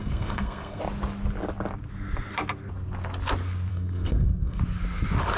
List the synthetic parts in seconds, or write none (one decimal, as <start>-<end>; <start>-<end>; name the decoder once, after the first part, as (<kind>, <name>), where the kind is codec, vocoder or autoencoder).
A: 0.0-0.8 (codec, SNAC); 3.7-4.6